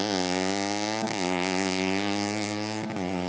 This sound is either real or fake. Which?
real